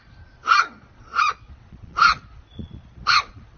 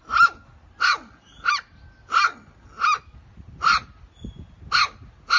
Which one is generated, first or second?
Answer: first